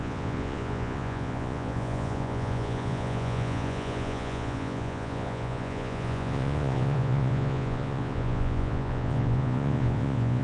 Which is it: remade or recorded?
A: remade